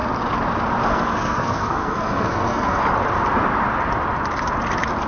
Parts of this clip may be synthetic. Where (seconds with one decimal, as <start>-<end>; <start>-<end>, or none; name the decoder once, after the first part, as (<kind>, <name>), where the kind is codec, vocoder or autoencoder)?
0.9-2.8 (codec, SNAC)

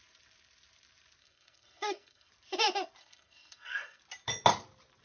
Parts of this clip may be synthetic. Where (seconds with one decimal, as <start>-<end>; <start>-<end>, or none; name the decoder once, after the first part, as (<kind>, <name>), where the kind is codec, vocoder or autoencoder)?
1.2-2.3 (codec, SNAC); 3.0-4.0